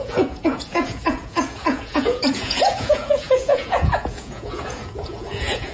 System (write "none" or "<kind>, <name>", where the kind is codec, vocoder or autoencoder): vocoder, Vocos